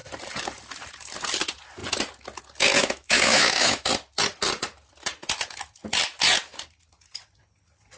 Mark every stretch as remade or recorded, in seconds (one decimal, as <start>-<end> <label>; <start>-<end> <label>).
0.0-2.8 recorded; 2.8-3.9 remade; 3.9-8.0 recorded